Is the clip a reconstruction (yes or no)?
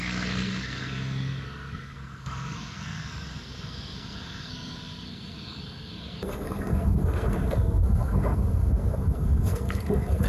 yes